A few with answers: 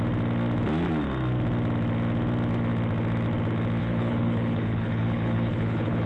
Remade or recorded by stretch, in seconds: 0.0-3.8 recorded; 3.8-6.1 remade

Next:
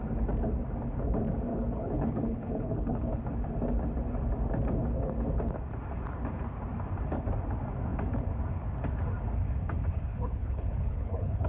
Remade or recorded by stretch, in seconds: 0.0-1.5 recorded; 1.5-3.2 remade; 3.2-10.1 recorded; 10.1-11.5 remade

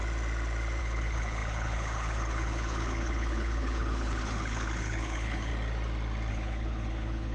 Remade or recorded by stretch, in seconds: 0.0-0.8 recorded; 0.8-5.5 remade; 5.5-6.3 recorded; 6.3-7.3 remade

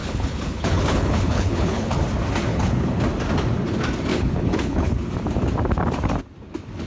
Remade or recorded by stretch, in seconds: 0.0-2.0 remade; 2.0-2.5 recorded; 2.5-3.0 remade; 3.0-4.1 recorded; 4.1-5.1 remade; 5.1-6.9 recorded

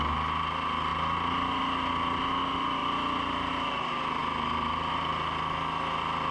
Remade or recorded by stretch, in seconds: 0.0-6.3 recorded

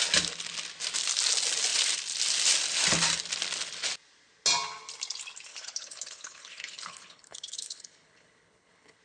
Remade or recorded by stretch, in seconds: 0.0-5.5 recorded; 5.5-9.0 remade

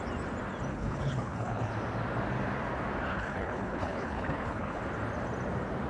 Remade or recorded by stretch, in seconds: 0.0-0.7 recorded; 0.7-1.7 remade; 1.7-3.1 recorded; 3.1-4.8 remade; 4.8-5.9 recorded